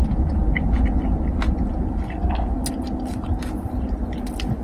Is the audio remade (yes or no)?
no